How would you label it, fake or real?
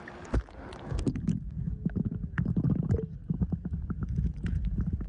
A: real